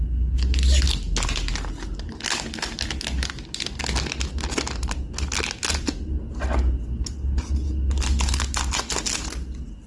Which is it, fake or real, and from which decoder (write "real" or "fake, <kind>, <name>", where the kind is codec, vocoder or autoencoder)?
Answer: real